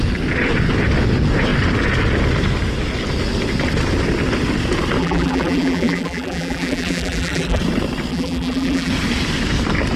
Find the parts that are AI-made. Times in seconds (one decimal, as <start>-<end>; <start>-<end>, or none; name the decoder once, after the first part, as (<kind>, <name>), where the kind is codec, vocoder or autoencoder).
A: 5.0-7.6 (vocoder, BigVGAN v2); 8.1-8.9